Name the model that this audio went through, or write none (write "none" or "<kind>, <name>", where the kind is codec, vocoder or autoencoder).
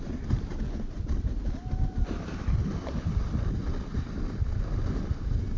none